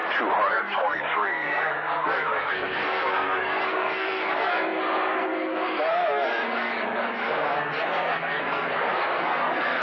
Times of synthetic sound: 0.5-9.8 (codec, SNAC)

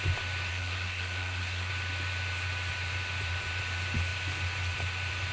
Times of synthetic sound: 0.5-1.7 (codec, SNAC)

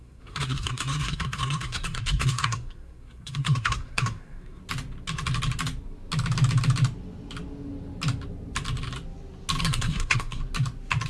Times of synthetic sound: 0.0-4.6 (codec, SNAC); 9.6-10.4

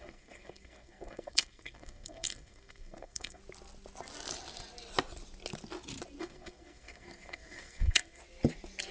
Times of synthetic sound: 0.0-3.4 (codec, SNAC); 6.2-8.2

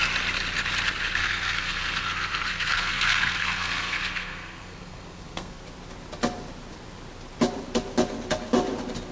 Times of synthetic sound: 1.2-5.6 (codec, SNAC)